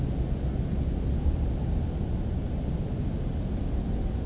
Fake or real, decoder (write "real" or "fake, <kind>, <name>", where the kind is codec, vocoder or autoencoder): real